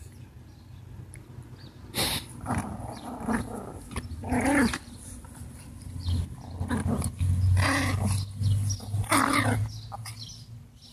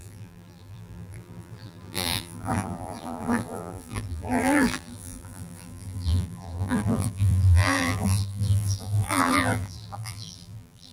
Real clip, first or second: first